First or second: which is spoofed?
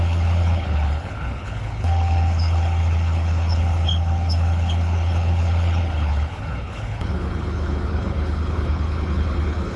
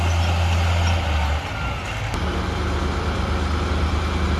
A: first